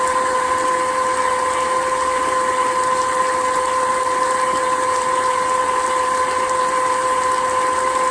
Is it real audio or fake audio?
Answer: real